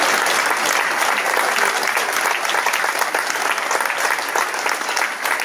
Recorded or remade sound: recorded